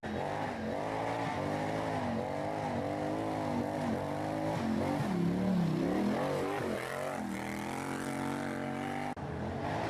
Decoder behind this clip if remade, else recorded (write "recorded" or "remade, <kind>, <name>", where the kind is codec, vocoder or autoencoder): recorded